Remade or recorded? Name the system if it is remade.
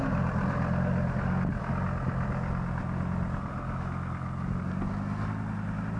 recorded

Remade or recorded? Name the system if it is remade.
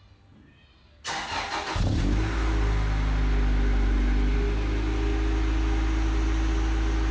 recorded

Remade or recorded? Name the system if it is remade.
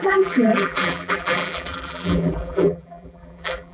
remade, vocoder, BigVGAN v2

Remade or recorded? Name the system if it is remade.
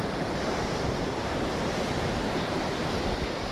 remade, vocoder, BigVGAN v2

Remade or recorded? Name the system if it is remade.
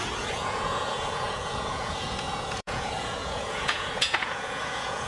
remade, vocoder, Vocos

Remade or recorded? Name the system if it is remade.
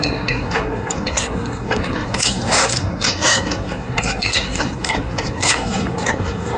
remade, codec, SNAC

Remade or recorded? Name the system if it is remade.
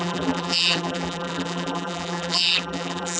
remade, vocoder, BigVGAN v2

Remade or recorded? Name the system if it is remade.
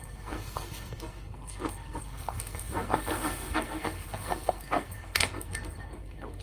remade, codec, SNAC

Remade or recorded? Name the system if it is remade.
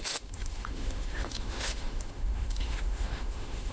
remade, autoencoder, DAC-VAE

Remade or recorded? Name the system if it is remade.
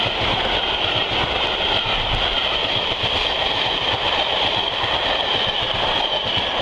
recorded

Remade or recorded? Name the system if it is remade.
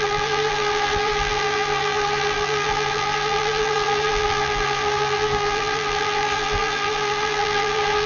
remade, vocoder, BigVGAN v2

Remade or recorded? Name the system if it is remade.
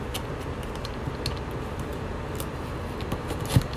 recorded